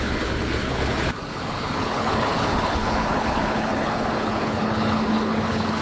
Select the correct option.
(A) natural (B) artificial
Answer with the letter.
B